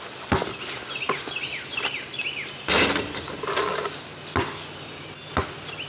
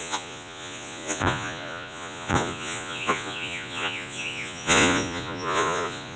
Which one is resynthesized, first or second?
second